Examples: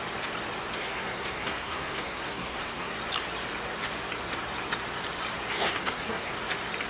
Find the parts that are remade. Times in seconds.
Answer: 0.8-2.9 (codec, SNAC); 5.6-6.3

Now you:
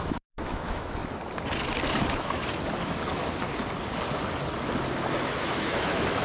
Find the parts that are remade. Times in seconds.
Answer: 0.0-1.0 (autoencoder, DAC-VAE); 2.1-3.2; 5.2-6.2

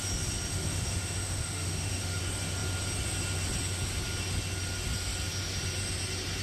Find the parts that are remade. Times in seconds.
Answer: 0.5-2.2 (autoencoder, DAC-VAE)

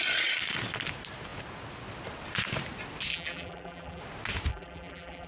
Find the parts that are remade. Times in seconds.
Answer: 3.1-4.0 (vocoder, BigVGAN v2); 4.5-5.3